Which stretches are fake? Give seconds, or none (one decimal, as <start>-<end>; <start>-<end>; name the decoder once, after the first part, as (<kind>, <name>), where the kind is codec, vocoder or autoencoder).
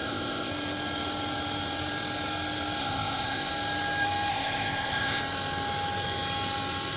0.0-0.5 (codec, ZipCodec); 2.8-3.5; 4.3-5.2